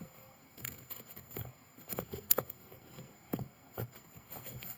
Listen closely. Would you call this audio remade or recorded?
remade